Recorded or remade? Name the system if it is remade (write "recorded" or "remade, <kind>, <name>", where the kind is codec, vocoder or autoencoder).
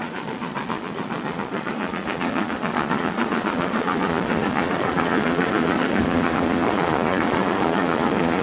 remade, vocoder, Vocos